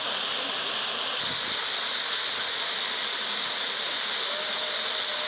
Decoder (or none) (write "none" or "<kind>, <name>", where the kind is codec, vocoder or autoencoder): none